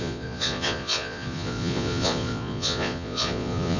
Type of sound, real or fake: fake